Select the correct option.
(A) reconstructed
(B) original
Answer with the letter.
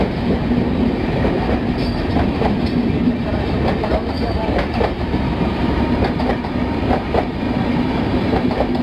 A